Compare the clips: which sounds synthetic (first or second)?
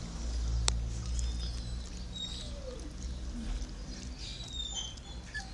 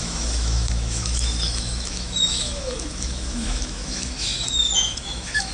second